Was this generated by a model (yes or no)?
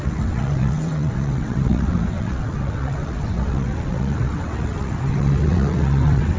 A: yes